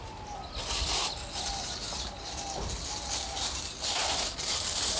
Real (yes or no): yes